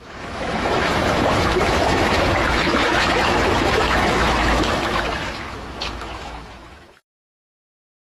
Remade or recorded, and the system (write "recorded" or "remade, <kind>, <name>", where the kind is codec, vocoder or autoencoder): remade, autoencoder, DAC-VAE